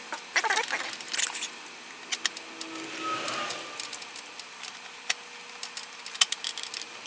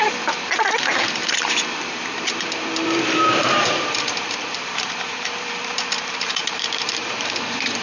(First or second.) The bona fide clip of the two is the first